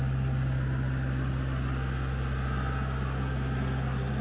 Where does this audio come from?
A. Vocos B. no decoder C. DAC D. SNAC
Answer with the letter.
B